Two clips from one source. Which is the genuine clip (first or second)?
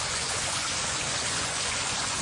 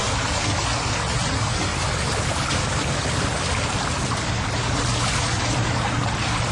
second